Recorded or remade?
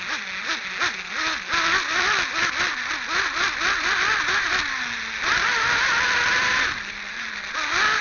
recorded